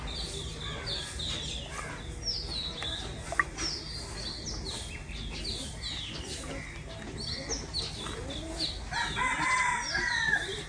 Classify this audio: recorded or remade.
recorded